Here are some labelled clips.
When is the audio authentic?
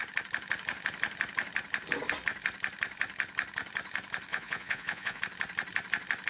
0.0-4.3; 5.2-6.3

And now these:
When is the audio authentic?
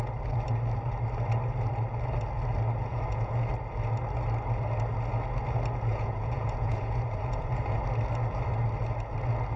0.0-2.9; 3.5-5.9; 7.8-9.6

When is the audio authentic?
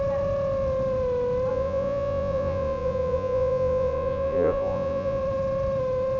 0.0-1.5; 5.2-6.2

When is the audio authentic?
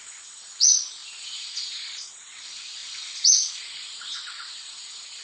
2.8-3.6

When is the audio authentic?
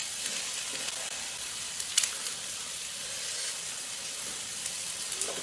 0.0-5.4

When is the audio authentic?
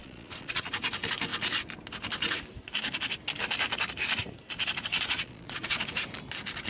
0.7-4.9; 5.8-6.7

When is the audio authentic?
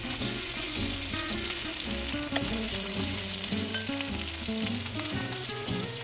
1.7-2.4; 3.7-4.8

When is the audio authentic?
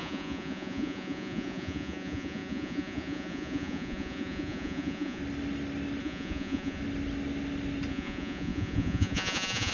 5.2-6.0; 6.8-7.9